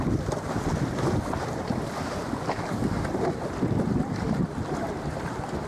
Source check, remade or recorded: remade